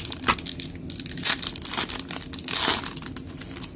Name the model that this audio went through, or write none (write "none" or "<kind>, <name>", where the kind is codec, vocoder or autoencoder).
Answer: none